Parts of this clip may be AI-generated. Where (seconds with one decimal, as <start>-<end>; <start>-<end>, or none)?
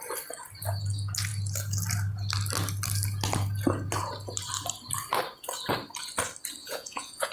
6.6-7.3